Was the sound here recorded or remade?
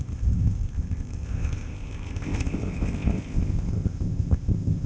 remade